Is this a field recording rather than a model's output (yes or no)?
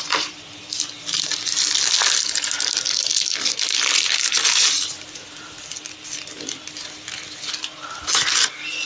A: yes